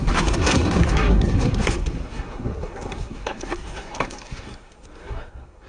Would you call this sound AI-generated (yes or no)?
yes